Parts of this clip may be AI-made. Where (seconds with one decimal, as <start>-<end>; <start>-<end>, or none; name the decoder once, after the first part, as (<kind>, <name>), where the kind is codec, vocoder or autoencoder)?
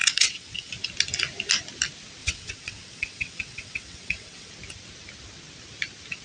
0.0-0.7 (vocoder, WaveNeXt); 2.2-4.5